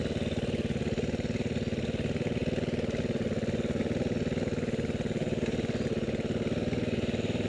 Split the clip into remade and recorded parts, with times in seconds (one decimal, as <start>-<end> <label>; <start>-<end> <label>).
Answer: 0.0-7.5 recorded